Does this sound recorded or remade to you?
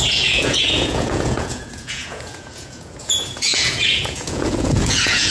remade